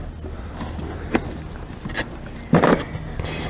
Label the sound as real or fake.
real